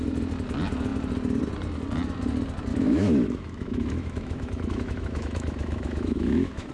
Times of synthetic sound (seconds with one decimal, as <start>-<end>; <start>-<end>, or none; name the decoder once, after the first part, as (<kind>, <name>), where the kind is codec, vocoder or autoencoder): 2.7-6.7 (autoencoder, DAC-VAE)